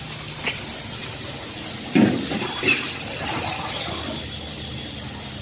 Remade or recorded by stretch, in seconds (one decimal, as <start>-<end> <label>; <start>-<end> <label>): 0.0-1.0 recorded; 1.0-3.5 remade; 3.5-5.4 recorded